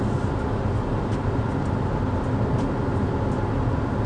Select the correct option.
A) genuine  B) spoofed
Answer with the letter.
A